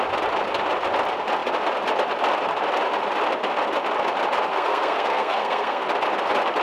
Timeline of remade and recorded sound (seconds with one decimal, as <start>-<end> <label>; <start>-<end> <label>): 0.0-4.5 recorded; 4.5-5.8 remade; 5.8-6.6 recorded